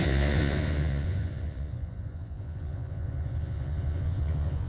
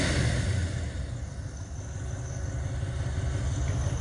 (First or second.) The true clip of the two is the second